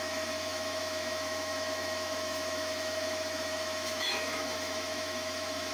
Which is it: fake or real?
fake